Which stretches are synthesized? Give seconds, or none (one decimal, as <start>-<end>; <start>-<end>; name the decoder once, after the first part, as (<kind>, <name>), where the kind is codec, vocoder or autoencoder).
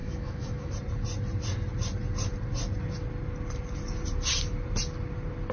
0.0-0.7 (autoencoder, DAC-VAE)